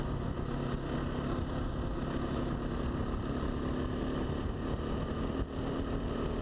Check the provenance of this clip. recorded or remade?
recorded